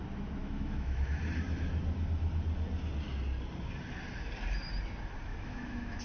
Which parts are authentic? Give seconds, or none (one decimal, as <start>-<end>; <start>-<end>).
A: 0.0-0.4; 1.2-5.3